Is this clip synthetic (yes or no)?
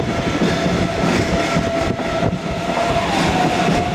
no